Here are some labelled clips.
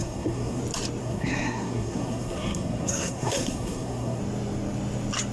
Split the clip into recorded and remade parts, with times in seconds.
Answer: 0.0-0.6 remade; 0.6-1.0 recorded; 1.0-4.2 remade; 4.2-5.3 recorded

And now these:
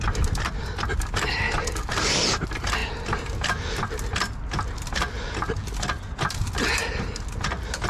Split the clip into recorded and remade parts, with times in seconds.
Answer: 0.0-7.9 recorded

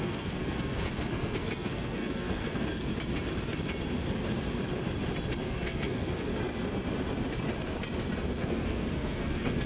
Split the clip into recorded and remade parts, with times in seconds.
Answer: 0.0-2.9 remade; 2.9-5.4 recorded; 5.4-6.3 remade; 6.3-8.4 recorded; 8.4-9.7 remade

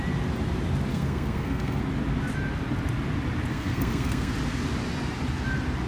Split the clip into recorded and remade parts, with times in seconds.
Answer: 0.0-0.9 recorded; 0.9-1.8 remade; 1.8-3.5 recorded; 3.5-4.3 remade; 4.3-5.9 recorded

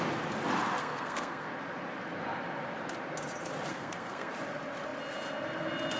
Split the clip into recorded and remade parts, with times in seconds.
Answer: 0.0-0.8 recorded; 0.8-1.5 remade; 1.5-3.7 recorded; 3.7-4.3 remade; 4.3-6.0 recorded

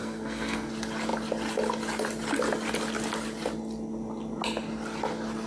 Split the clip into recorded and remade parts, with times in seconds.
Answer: 0.0-0.7 remade; 0.7-5.5 recorded

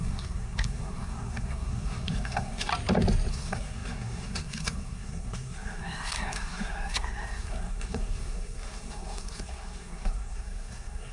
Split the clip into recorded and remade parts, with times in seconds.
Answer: 0.0-2.7 remade; 2.7-3.3 recorded; 3.3-11.1 remade

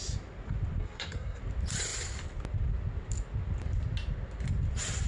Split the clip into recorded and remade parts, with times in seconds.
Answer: 0.0-0.8 recorded; 0.8-1.4 remade; 1.4-5.1 recorded